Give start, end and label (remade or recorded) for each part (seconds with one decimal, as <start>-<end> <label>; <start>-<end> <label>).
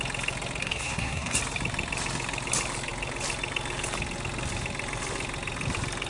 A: 0.0-0.6 recorded; 0.6-1.4 remade; 1.4-6.1 recorded